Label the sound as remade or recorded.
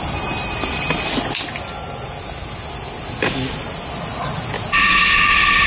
recorded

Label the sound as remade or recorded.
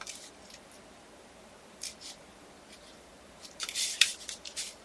remade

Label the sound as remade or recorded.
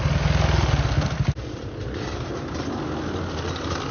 recorded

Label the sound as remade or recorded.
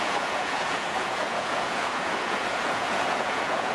remade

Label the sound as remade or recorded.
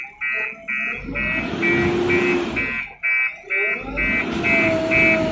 recorded